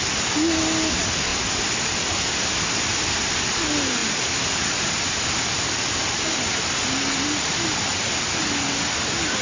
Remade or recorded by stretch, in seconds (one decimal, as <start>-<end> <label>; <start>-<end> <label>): 0.0-9.4 recorded